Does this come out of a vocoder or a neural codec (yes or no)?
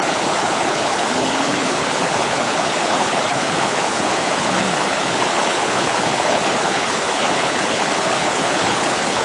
yes